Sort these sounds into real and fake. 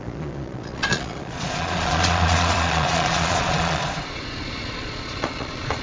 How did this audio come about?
fake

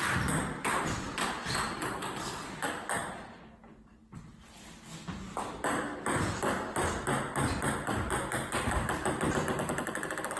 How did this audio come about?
real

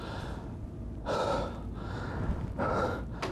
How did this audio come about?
real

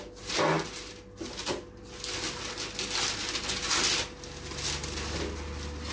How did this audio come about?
real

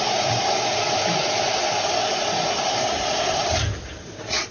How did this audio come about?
fake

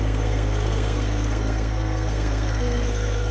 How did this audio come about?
fake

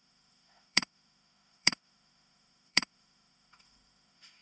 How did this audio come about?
fake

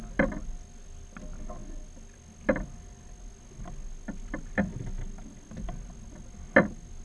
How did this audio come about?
real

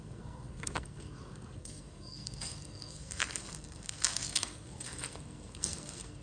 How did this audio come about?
fake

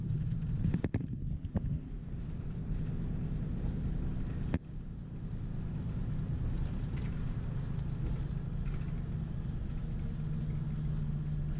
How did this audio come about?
real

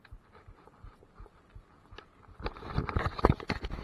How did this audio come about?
real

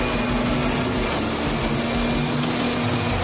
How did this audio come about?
real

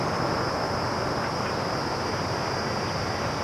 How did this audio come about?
real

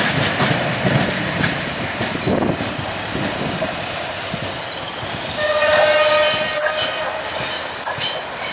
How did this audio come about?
fake